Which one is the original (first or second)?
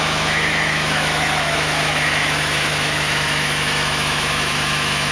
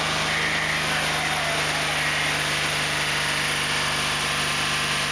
second